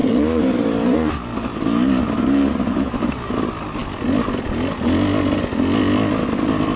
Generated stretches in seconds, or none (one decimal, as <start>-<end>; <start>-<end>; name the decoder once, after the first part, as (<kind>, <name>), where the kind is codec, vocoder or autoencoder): 0.0-1.1 (vocoder, BigVGAN v2); 1.5-3.3